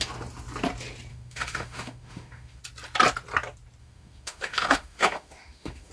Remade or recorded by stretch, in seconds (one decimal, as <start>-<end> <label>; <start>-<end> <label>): 0.0-1.1 recorded; 1.1-2.6 remade; 2.6-3.8 recorded; 3.8-5.9 remade